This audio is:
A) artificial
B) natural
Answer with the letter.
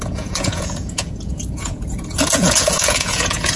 A